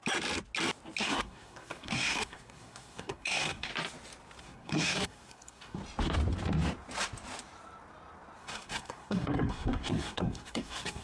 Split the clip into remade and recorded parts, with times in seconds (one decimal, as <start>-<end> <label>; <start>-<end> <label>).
0.0-1.0 recorded; 1.0-3.7 remade; 3.7-4.4 recorded; 4.4-5.8 remade; 5.8-8.4 recorded; 8.4-11.0 remade